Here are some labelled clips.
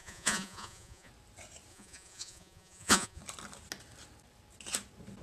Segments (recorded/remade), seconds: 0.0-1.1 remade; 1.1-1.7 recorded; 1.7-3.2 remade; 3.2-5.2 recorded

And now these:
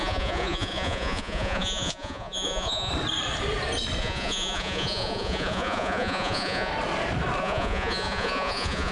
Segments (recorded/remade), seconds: 0.0-2.9 remade; 2.9-4.0 recorded; 4.0-6.7 remade; 6.7-7.4 recorded; 7.4-8.9 remade

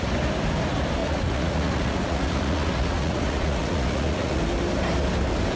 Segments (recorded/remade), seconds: 0.0-1.0 recorded; 1.0-4.4 remade; 4.4-5.6 recorded

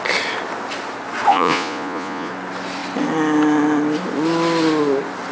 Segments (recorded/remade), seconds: 0.0-1.3 recorded; 1.3-2.3 remade; 2.3-5.3 recorded

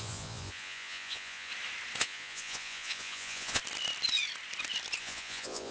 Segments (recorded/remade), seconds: 0.0-1.5 remade; 1.5-2.0 recorded; 2.0-3.6 remade; 3.6-5.0 recorded; 5.0-5.7 remade